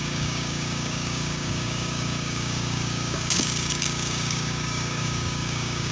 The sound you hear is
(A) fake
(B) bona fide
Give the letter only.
A